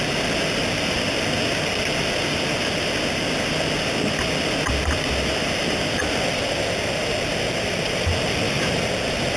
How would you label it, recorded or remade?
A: recorded